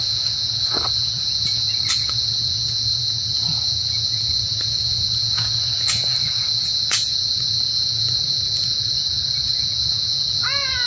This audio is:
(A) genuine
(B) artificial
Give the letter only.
B